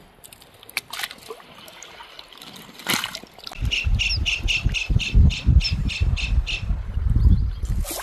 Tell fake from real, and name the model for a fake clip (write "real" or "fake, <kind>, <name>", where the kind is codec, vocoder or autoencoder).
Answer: real